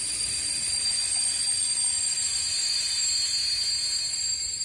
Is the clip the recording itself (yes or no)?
yes